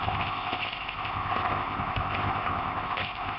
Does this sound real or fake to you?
fake